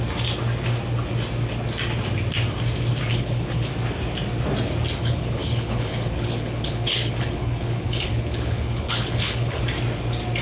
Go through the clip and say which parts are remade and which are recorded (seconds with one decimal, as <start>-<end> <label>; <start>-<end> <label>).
0.0-3.1 recorded; 3.1-3.7 remade; 3.7-5.0 recorded; 5.0-9.6 remade; 9.6-10.4 recorded